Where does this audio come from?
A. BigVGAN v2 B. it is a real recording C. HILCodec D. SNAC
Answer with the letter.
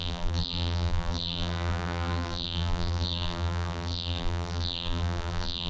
A